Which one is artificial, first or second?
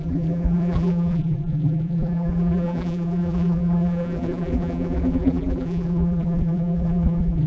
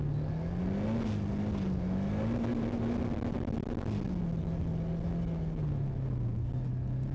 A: first